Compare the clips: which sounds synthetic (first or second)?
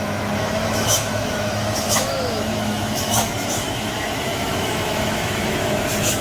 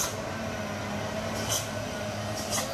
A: first